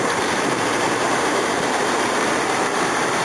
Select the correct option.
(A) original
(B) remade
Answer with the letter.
B